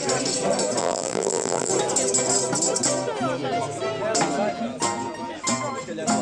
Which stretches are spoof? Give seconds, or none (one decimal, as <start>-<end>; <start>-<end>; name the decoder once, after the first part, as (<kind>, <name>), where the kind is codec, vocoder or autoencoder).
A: 0.8-1.7 (vocoder, BigVGAN v2)